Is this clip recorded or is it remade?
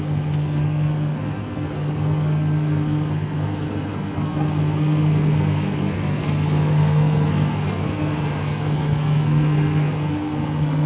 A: remade